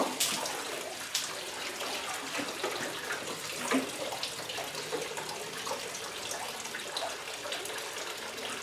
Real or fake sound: real